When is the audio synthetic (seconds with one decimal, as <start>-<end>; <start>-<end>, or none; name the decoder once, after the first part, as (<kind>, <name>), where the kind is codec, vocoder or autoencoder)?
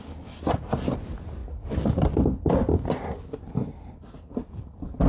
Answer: none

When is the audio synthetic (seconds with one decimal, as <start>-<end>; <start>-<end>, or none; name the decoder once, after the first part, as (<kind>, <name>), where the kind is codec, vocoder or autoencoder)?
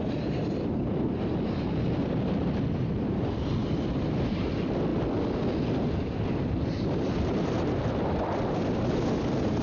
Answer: none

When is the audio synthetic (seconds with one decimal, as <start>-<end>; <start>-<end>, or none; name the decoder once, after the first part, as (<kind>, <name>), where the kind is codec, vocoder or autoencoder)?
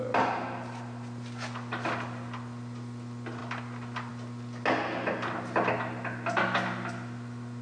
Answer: none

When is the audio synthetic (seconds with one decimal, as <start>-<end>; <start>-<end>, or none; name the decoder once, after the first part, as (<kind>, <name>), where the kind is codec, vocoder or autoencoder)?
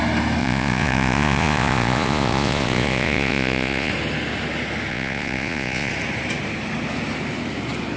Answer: 0.4-3.9 (vocoder, Vocos); 4.9-5.9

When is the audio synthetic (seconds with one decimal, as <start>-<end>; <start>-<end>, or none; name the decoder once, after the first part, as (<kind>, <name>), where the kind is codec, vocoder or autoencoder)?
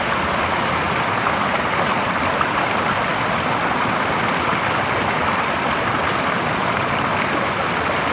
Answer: none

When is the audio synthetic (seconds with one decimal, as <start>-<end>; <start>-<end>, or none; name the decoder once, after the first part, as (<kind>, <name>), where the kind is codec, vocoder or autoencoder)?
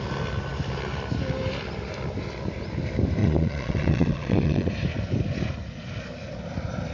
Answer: 3.2-4.7 (vocoder, Vocos)